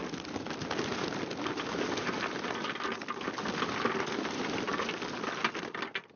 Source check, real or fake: real